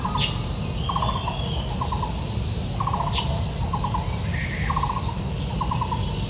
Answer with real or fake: real